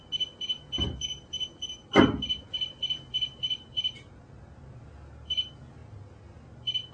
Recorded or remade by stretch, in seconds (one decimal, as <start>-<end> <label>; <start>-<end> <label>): 0.0-6.9 recorded